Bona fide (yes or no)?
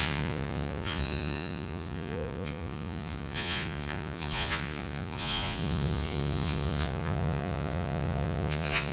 no